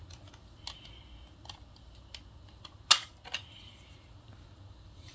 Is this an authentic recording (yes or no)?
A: yes